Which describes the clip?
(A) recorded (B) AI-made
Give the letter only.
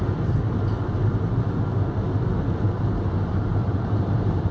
A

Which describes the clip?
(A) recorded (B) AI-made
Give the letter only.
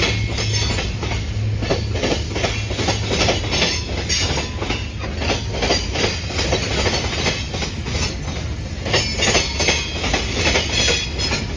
A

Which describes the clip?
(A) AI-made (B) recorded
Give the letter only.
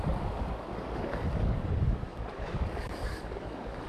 A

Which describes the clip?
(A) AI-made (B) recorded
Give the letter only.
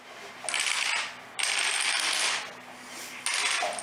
B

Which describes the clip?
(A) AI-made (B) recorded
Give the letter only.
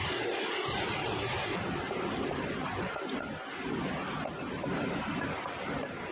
B